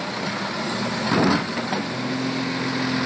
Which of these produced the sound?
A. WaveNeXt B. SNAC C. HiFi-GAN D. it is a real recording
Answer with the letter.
D